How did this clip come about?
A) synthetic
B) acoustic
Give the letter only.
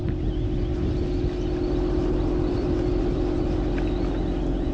B